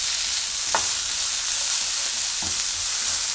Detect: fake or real real